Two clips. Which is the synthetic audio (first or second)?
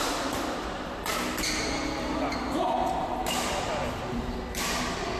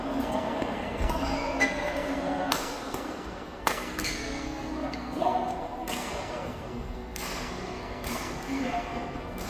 second